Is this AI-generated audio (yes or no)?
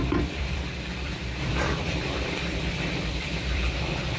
yes